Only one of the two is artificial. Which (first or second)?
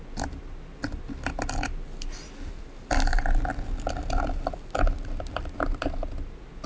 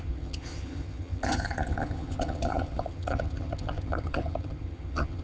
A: second